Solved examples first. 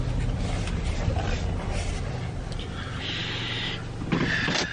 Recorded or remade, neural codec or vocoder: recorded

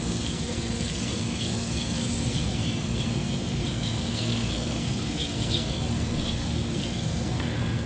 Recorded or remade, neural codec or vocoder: remade, codec, SNAC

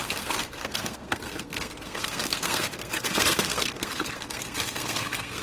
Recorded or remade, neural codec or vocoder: remade, codec, SNAC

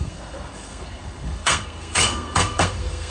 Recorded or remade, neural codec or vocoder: remade, codec, SNAC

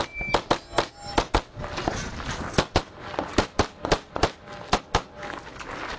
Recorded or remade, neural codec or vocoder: recorded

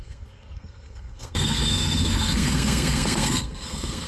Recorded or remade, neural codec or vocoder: remade, codec, SNAC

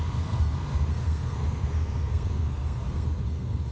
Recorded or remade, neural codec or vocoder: remade, codec, SNAC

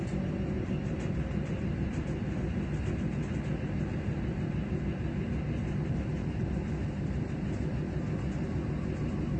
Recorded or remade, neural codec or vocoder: recorded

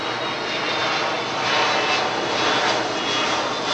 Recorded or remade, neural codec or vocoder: recorded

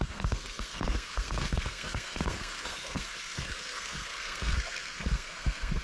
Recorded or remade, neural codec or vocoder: remade, codec, SNAC